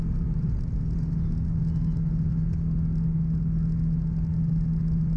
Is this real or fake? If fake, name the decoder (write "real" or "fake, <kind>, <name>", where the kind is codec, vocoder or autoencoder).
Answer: real